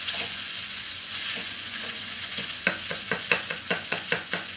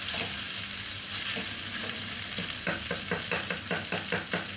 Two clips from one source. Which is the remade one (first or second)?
first